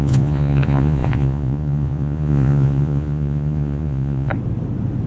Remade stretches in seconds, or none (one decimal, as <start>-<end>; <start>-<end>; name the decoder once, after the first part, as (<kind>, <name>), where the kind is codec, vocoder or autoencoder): 0.0-4.3 (vocoder, Vocos)